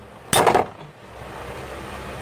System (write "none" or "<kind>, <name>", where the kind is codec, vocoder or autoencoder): none